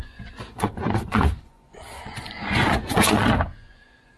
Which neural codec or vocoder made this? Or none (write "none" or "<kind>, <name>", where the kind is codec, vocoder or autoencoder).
vocoder, Vocos